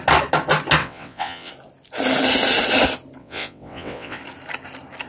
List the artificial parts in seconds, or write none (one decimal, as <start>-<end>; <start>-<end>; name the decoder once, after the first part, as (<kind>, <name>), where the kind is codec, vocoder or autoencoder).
0.8-1.5 (vocoder, WaveNeXt); 3.2-4.2